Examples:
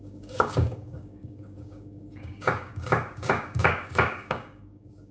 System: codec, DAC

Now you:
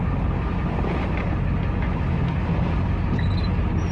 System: none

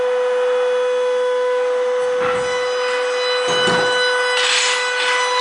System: none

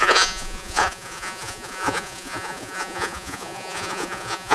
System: vocoder, Vocos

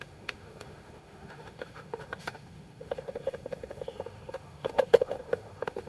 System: autoencoder, DAC-VAE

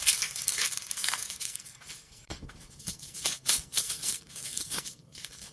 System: codec, SNAC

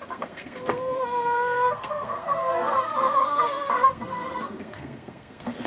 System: codec, SNAC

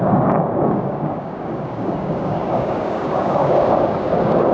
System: codec, DAC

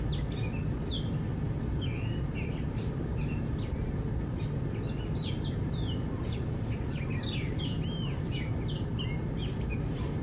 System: none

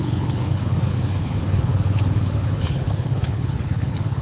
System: codec, HILCodec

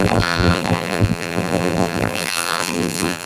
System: vocoder, BigVGAN v2